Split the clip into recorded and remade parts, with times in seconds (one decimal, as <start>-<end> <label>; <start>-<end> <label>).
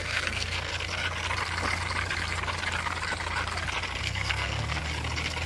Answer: 0.0-0.7 remade; 0.7-4.0 recorded; 4.0-4.8 remade; 4.8-5.5 recorded